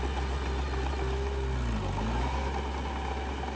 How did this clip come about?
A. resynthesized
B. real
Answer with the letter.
B